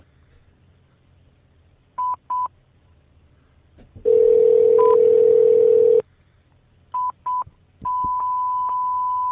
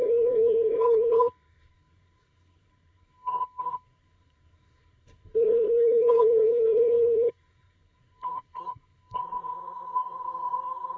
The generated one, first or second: second